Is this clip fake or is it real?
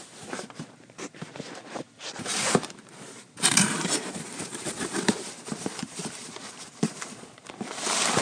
fake